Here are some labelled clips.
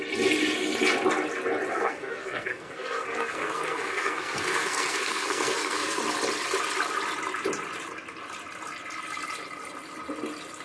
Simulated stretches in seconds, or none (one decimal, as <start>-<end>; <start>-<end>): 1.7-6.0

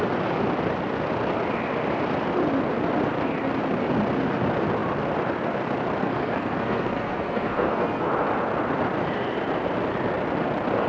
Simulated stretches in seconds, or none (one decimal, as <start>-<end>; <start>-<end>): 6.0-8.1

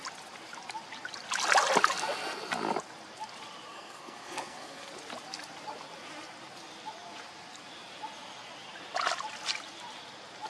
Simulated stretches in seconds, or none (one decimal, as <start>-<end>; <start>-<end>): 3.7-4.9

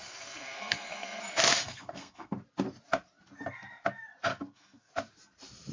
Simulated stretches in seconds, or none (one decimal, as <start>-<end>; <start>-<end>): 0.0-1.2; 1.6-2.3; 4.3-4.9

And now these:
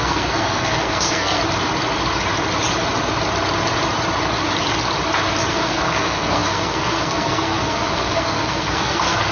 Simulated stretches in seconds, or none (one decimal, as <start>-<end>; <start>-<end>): 0.0-1.4; 5.5-9.3

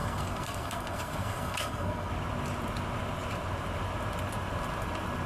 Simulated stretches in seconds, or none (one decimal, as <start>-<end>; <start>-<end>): 0.0-2.1

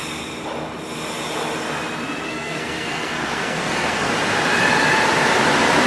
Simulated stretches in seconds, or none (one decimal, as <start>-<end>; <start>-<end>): 2.3-4.1

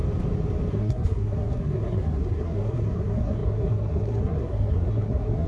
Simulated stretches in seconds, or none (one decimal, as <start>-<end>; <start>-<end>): 0.7-5.5